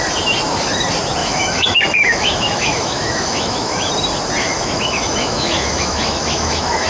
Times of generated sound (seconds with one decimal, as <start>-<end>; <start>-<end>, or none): 1.2-3.9; 4.4-6.9